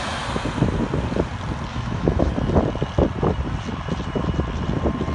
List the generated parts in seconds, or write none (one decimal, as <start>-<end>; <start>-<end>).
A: 1.7-2.3